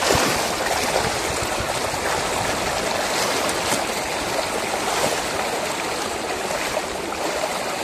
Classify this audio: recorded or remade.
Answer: recorded